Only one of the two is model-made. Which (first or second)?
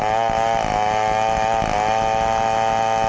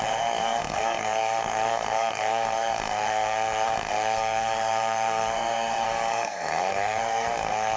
second